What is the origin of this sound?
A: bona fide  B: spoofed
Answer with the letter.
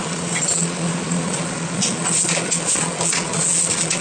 B